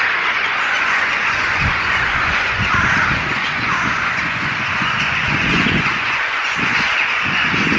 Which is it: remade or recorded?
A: remade